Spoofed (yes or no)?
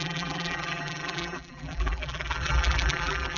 yes